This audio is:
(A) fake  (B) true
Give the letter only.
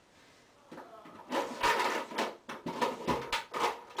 B